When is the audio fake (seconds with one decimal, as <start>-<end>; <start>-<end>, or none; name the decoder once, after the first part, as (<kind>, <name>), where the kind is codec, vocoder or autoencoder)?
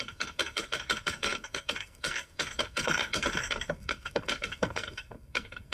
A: 0.0-5.7 (codec, SNAC)